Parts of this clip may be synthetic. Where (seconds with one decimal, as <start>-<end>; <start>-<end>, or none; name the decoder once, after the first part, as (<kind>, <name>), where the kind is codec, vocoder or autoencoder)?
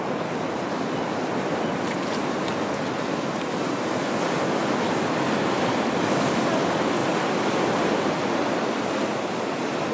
none